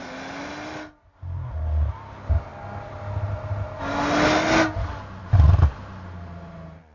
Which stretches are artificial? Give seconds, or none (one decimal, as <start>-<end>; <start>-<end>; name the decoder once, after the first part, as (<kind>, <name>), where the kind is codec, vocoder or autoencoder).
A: none

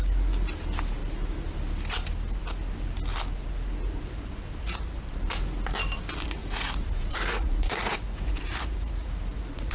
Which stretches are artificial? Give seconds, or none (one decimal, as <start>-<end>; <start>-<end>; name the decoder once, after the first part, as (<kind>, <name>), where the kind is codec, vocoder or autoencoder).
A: 6.4-9.7 (vocoder, Vocos)